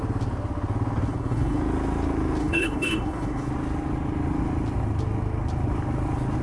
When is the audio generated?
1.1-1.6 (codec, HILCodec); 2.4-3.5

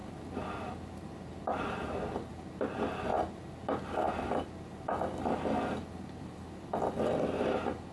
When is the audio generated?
none

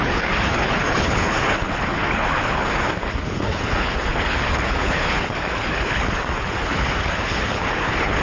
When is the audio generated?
0.0-8.2 (codec, HILCodec)

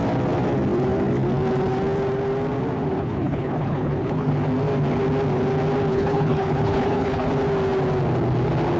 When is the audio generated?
3.0-4.3 (codec, HILCodec); 5.9-7.3